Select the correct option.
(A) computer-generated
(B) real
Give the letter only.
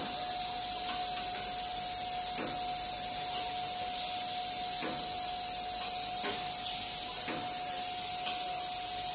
B